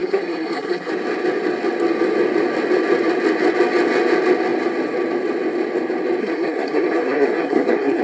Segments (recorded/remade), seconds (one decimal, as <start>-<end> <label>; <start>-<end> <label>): 0.0-0.9 remade; 0.9-6.2 recorded; 6.2-8.0 remade